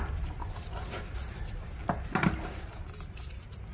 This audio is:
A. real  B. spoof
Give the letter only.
A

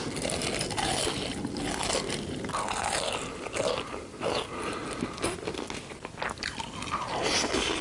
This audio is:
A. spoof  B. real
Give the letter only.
B